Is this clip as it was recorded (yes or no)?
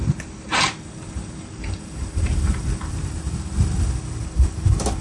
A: yes